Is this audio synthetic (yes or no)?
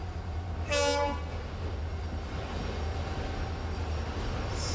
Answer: no